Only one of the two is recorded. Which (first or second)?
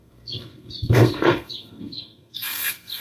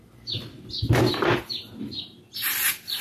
second